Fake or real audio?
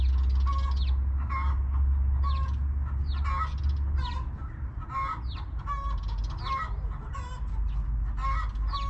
real